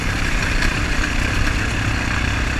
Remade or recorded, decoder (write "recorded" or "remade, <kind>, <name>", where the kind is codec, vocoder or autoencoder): recorded